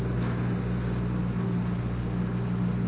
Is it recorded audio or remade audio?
recorded